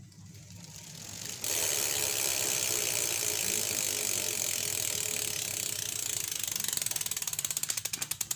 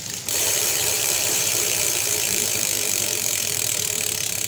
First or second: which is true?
first